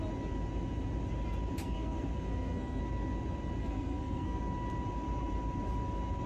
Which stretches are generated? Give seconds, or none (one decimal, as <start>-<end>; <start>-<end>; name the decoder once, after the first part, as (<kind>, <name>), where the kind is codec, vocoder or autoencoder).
1.6-2.8 (codec, SNAC); 3.6-4.4